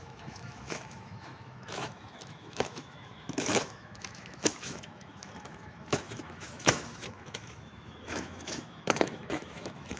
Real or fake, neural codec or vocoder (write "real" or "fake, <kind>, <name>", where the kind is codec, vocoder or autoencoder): fake, autoencoder, DAC-VAE